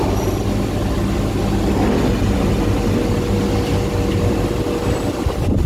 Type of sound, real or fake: real